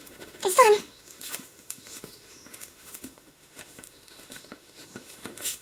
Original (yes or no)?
no